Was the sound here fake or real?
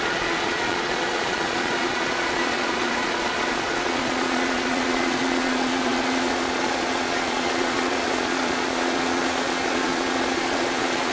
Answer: fake